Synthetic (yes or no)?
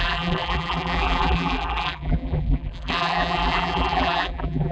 yes